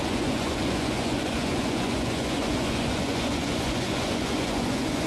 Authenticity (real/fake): fake